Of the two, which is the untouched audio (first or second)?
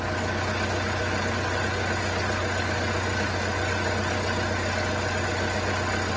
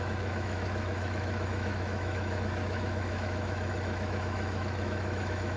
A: first